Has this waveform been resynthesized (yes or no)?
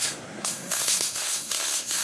yes